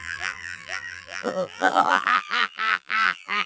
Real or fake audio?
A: fake